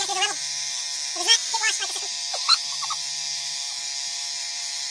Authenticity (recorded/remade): remade